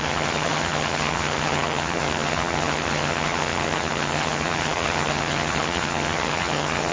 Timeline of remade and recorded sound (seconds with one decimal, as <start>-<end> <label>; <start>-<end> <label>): 0.0-6.9 remade